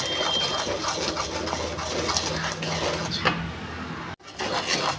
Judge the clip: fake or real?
real